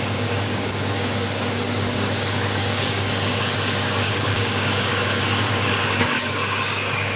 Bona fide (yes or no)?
no